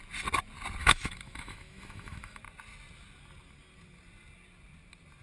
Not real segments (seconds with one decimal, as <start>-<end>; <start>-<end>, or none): 0.8-2.4